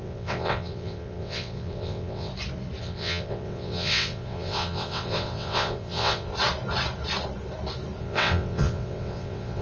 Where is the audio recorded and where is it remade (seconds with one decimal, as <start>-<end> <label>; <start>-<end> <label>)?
0.0-2.3 remade; 2.3-2.8 recorded; 2.8-6.3 remade; 6.3-8.0 recorded; 8.0-9.6 remade